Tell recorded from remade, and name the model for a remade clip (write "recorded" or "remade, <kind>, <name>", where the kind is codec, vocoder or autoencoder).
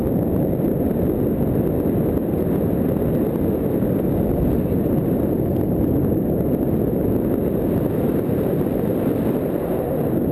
recorded